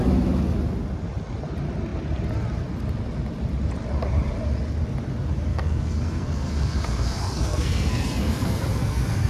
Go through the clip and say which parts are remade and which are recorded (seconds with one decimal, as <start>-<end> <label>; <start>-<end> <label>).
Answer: 0.0-5.5 recorded; 5.5-9.3 remade